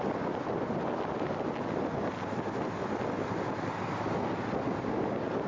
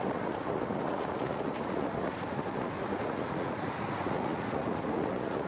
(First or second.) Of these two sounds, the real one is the first